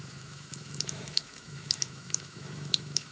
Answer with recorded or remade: remade